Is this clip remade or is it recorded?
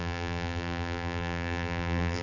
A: remade